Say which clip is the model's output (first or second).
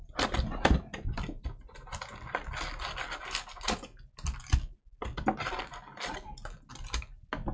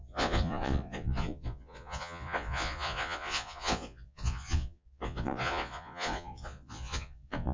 second